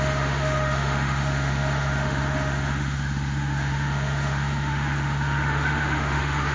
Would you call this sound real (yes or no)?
no